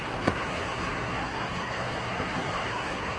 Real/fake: fake